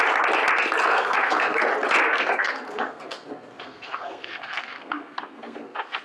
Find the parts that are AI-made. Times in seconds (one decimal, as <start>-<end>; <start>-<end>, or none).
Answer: 0.8-1.6; 2.1-6.0

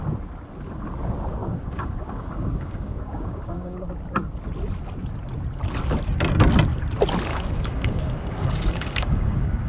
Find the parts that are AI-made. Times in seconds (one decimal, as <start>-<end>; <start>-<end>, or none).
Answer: 1.4-3.9; 7.3-9.7

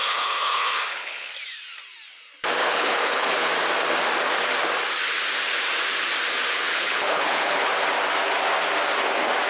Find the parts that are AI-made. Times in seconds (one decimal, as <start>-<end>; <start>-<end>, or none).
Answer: 0.0-1.3; 2.6-3.5; 6.5-7.7